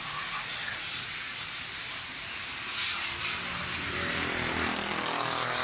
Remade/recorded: recorded